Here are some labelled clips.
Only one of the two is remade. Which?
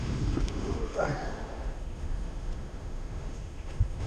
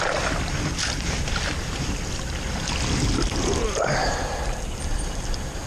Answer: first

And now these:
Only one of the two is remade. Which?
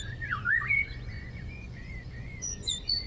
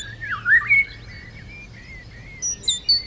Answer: first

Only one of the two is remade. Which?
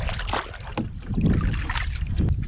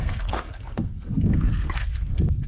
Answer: second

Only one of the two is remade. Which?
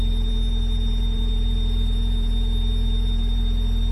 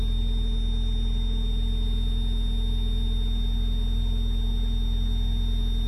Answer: first